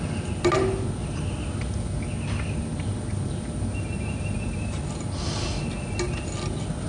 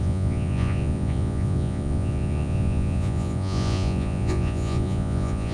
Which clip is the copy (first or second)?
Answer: second